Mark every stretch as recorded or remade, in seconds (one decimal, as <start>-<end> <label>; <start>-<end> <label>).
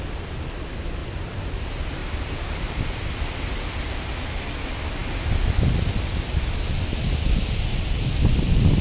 0.0-1.0 recorded; 1.0-1.6 remade; 1.6-2.0 recorded; 2.0-3.1 remade; 3.1-8.8 recorded